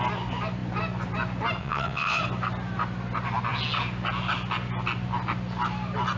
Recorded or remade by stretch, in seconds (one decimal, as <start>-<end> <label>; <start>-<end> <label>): 0.0-1.6 recorded; 1.6-2.2 remade; 2.2-6.2 recorded